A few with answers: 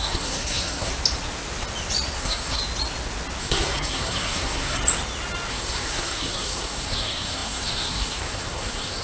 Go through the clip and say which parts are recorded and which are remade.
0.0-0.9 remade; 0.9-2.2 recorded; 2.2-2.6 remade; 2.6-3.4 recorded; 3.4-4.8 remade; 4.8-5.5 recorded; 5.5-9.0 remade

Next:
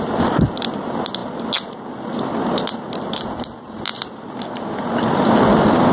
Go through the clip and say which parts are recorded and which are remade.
0.0-5.9 recorded